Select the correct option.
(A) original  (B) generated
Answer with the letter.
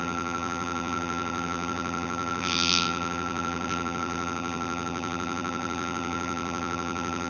B